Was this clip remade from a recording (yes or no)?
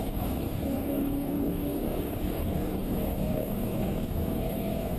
yes